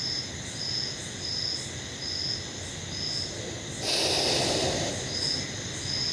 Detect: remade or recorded recorded